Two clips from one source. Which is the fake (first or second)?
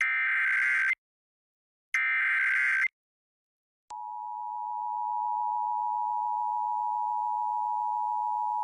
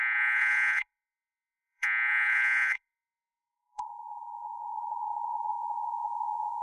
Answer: second